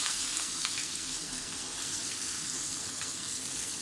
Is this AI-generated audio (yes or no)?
yes